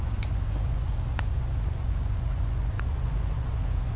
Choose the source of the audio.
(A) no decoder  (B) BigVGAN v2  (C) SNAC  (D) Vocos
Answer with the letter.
D